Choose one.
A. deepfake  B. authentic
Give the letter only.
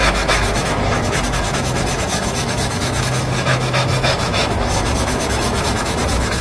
A